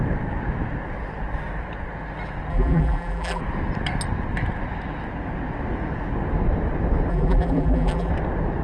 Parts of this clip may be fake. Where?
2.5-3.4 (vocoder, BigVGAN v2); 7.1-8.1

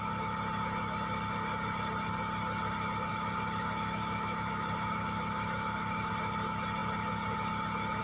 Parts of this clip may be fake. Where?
3.1-6.1 (autoencoder, DAC-VAE)

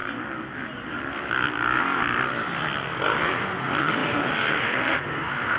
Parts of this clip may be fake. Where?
3.3-5.6 (autoencoder, DAC-VAE)

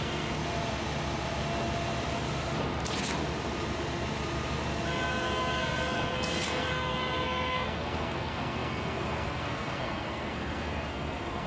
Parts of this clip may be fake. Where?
0.0-0.4 (codec, SNAC); 5.1-11.5

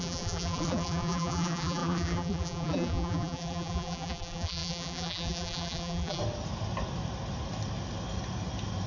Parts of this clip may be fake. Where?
0.0-6.2 (vocoder, BigVGAN v2)

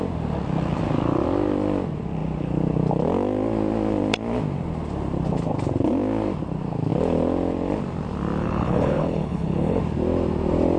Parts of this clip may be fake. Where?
8.4-9.8 (codec, HILCodec)